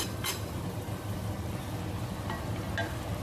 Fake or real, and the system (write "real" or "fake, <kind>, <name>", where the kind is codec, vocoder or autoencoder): real